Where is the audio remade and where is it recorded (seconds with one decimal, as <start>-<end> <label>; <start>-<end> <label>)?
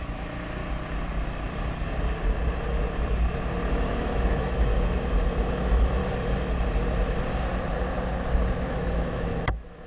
0.0-0.6 remade; 0.6-3.7 recorded; 3.7-4.7 remade; 4.7-5.5 recorded; 5.5-6.0 remade; 6.0-8.7 recorded; 8.7-9.9 remade